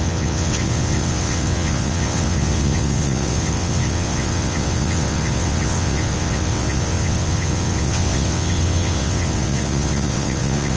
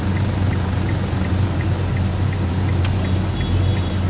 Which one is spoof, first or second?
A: first